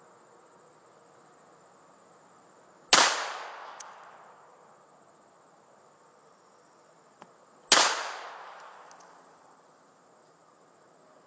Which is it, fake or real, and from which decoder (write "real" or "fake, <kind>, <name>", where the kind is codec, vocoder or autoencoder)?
real